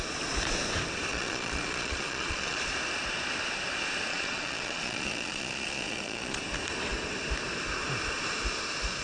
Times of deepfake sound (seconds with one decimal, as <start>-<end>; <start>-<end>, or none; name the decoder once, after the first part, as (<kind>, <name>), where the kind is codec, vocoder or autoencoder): 1.1-2.6 (vocoder, Vocos); 4.1-6.4